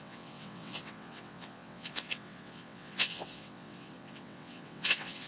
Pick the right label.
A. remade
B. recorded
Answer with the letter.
A